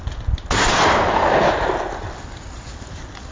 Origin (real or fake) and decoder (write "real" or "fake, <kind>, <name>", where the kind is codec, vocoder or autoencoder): real